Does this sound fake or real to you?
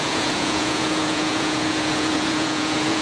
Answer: fake